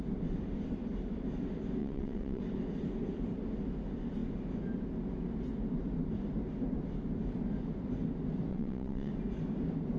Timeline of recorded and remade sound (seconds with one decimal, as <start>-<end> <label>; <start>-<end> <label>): 0.0-1.8 recorded; 1.8-2.4 remade; 2.4-8.5 recorded; 8.5-9.1 remade; 9.1-10.0 recorded